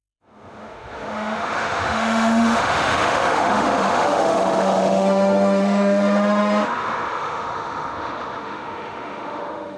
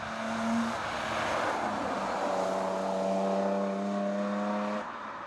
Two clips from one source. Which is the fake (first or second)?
first